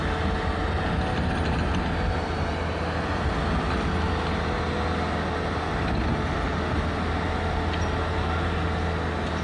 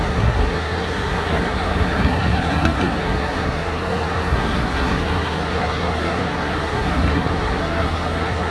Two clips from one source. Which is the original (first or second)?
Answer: first